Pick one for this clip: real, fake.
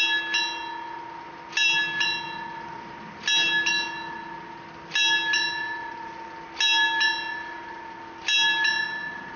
real